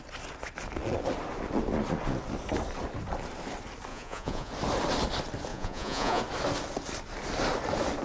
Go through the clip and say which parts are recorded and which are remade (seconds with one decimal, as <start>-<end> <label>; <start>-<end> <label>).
0.0-3.9 recorded; 3.9-4.5 remade; 4.5-5.5 recorded; 5.5-6.2 remade; 6.2-8.0 recorded